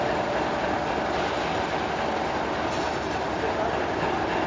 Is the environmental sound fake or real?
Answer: real